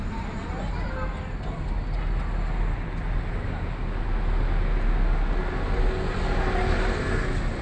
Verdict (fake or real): real